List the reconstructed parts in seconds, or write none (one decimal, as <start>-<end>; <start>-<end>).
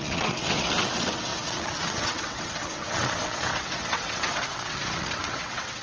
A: 0.0-5.8